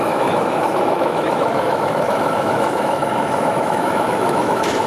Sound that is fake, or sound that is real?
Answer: fake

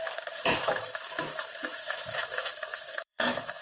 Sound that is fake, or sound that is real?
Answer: fake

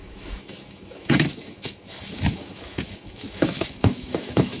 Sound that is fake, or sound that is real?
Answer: fake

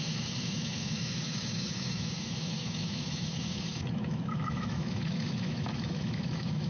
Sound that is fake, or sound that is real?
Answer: fake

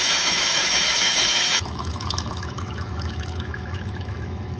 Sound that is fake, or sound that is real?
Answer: fake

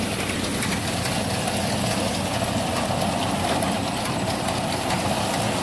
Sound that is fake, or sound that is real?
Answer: real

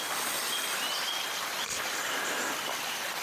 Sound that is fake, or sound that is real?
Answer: real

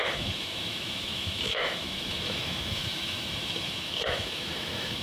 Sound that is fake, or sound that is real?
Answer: fake